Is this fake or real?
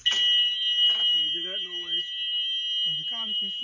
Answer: real